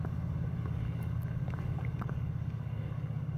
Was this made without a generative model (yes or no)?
no